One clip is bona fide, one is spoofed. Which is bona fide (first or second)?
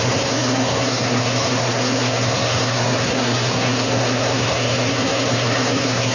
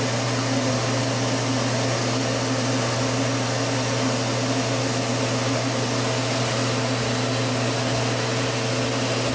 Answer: second